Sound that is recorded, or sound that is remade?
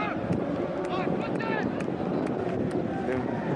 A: recorded